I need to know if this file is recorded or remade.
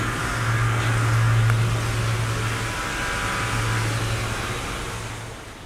recorded